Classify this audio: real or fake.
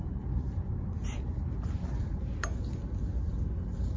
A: real